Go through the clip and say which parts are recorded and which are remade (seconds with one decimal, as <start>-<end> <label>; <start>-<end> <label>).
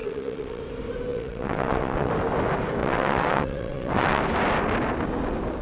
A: 0.0-0.6 remade; 0.6-1.1 recorded; 1.1-2.1 remade; 2.1-2.8 recorded; 2.8-4.2 remade; 4.2-5.6 recorded